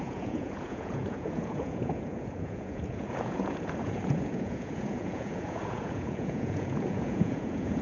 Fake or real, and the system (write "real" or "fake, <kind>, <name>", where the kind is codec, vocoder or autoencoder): fake, vocoder, Vocos